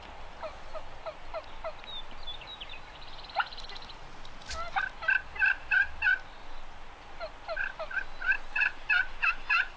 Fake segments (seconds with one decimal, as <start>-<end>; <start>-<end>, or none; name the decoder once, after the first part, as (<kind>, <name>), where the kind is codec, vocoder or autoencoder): none